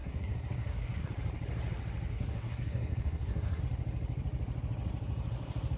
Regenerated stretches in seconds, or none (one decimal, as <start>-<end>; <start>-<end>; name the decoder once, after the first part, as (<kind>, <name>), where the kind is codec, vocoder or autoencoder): 0.0-1.1 (codec, SNAC); 2.1-3.6